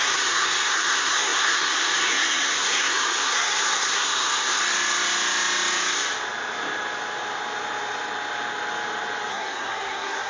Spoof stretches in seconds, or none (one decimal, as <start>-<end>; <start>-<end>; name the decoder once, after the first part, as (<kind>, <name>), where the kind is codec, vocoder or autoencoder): 0.0-4.6 (codec, SNAC); 9.3-10.3